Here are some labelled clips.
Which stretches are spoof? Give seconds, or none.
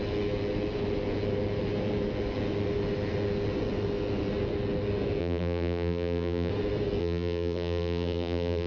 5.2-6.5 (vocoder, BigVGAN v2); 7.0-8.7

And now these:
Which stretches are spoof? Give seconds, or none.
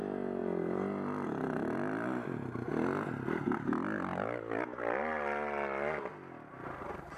none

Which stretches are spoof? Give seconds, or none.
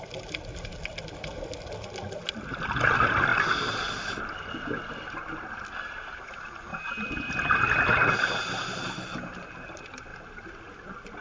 none